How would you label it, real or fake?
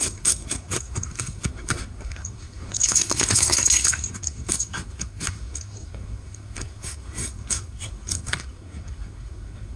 fake